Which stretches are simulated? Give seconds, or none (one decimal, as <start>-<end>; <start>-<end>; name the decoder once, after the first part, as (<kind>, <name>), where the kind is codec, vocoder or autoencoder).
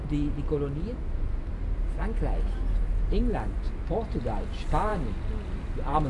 none